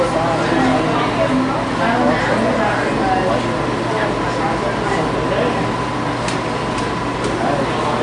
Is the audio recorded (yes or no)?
yes